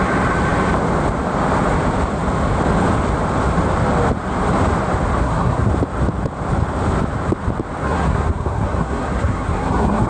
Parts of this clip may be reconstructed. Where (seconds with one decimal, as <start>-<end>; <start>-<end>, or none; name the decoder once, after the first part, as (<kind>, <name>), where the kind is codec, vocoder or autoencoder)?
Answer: 5.2-5.7 (codec, SNAC); 7.8-10.1